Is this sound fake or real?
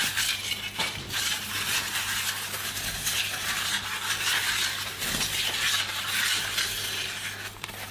real